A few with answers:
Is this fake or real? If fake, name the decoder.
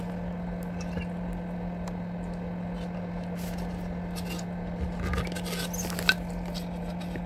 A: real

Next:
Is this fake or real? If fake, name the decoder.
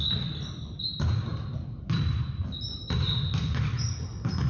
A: real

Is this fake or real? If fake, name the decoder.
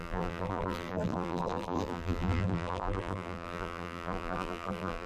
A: fake, vocoder, BigVGAN v2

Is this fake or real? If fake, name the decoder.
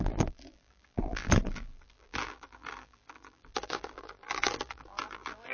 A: fake, vocoder, BigVGAN v2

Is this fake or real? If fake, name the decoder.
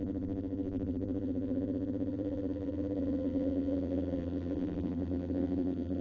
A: fake, vocoder, BigVGAN v2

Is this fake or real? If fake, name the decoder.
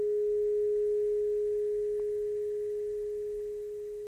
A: real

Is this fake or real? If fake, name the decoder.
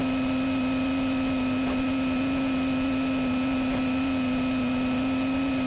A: real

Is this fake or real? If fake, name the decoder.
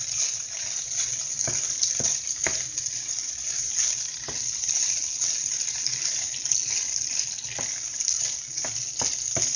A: real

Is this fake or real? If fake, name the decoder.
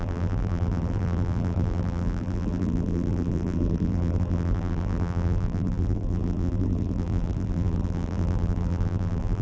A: fake, vocoder, BigVGAN v2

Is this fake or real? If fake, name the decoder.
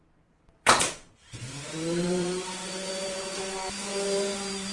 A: fake, vocoder, BigVGAN v2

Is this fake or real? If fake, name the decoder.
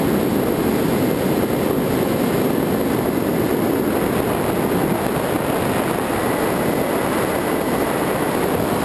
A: real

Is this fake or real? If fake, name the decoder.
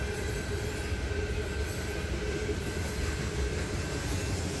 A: real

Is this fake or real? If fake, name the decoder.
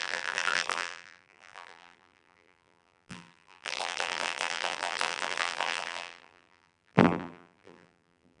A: fake, vocoder, BigVGAN v2